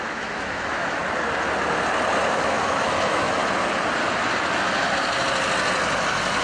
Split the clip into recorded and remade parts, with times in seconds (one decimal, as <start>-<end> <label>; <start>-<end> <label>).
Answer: 0.0-1.0 remade; 1.0-2.3 recorded; 2.3-3.4 remade; 3.4-6.4 recorded